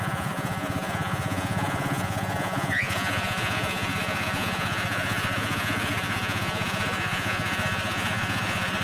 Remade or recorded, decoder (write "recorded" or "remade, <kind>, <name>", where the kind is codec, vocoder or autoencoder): remade, vocoder, Vocos